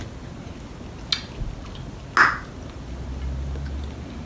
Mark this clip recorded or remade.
recorded